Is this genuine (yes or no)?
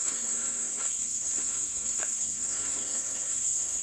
no